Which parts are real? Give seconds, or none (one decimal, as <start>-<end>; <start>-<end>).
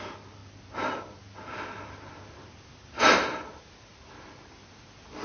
0.0-5.2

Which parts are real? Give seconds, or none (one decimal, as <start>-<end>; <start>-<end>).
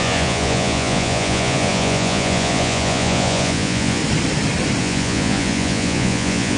4.0-4.8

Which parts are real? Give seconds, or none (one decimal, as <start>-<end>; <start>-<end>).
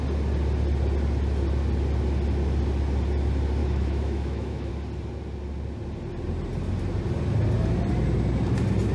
0.0-3.6; 4.7-8.9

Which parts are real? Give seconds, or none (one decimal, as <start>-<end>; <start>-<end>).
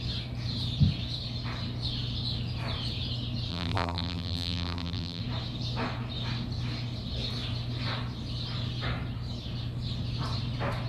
0.0-3.5; 5.2-10.9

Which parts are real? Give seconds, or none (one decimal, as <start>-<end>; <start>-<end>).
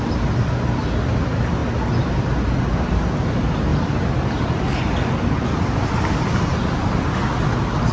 0.0-7.9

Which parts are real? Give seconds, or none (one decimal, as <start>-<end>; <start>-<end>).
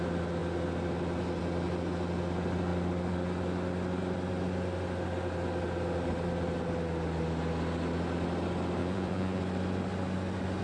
0.0-8.8; 9.4-10.6